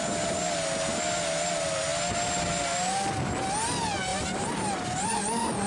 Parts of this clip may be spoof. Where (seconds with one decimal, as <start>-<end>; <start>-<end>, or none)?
4.1-5.2